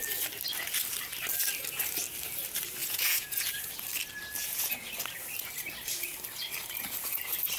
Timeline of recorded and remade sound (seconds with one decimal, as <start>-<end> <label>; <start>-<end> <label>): 0.0-2.8 recorded; 2.8-3.7 remade; 3.7-4.4 recorded; 4.4-4.9 remade; 4.9-7.6 recorded

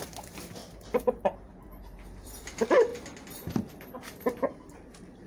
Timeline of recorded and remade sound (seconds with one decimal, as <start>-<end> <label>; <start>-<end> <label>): 0.0-2.9 remade; 2.9-3.7 recorded; 3.7-5.3 remade

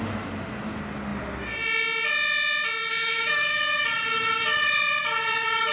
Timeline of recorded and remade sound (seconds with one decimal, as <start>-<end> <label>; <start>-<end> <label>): 0.0-2.9 recorded; 2.9-3.6 remade; 3.6-5.7 recorded

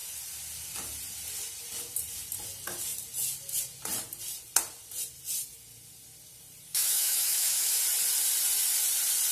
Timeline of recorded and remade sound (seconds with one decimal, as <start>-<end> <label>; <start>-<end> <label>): 0.0-6.7 recorded; 6.7-7.8 remade; 7.8-9.3 recorded